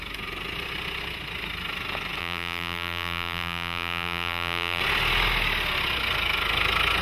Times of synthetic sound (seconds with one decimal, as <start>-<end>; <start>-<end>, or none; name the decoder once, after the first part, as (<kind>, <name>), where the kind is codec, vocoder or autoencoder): 2.2-4.8 (vocoder, BigVGAN v2)